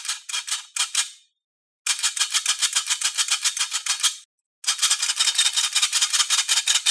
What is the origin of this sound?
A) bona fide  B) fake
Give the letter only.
A